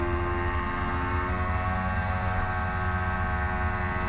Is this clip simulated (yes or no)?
no